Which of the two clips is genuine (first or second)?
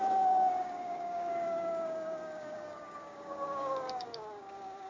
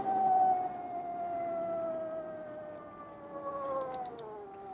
second